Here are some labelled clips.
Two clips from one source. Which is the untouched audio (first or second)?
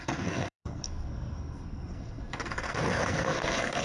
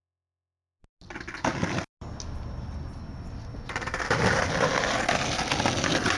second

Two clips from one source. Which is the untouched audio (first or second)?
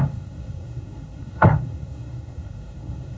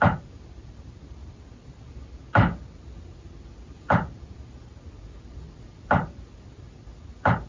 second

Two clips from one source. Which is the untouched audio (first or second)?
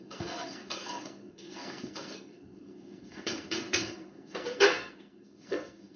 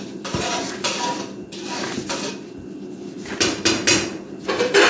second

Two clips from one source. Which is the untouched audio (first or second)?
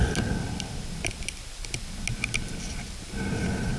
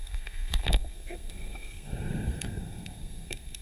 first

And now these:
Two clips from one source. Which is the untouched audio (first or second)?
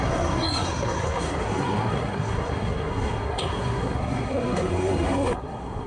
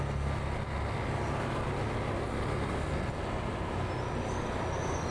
second